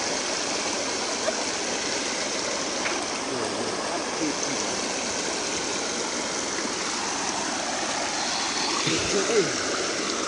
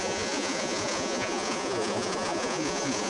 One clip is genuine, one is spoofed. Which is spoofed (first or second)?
second